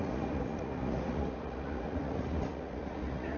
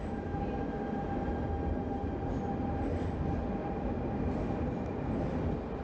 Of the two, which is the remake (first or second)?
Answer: first